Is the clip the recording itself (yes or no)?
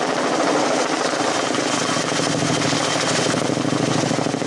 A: yes